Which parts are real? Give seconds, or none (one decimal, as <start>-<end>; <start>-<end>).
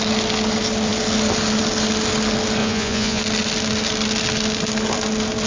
0.0-2.6; 3.2-5.5